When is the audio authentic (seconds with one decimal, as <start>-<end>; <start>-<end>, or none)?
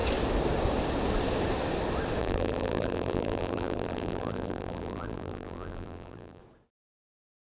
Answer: 0.0-2.2; 6.4-7.6